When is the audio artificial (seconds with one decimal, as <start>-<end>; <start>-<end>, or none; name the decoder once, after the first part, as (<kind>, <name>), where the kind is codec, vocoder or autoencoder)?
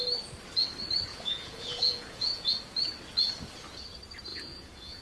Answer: 1.1-2.5 (vocoder, Vocos); 4.3-5.0